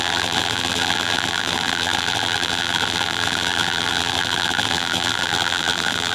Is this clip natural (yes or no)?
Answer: no